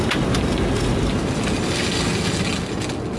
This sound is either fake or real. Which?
real